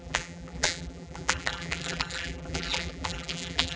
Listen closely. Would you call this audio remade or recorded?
remade